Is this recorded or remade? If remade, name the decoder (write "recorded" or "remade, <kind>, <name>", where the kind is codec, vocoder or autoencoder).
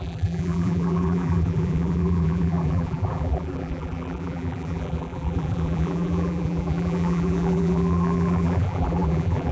remade, vocoder, BigVGAN v2